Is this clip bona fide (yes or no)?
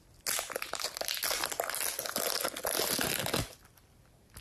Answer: yes